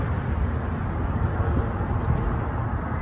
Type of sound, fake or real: fake